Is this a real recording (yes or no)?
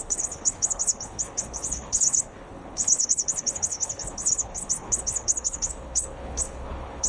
no